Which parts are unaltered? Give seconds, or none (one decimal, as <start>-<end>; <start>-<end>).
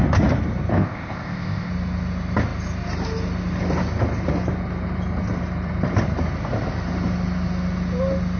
0.0-0.7; 1.7-8.4